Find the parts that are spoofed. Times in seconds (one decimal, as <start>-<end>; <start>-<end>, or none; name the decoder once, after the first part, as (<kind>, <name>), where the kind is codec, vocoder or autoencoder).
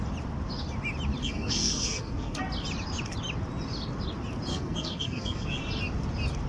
1.2-2.4 (codec, SNAC); 4.5-5.6